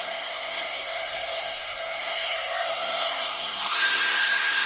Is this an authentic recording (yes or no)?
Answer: no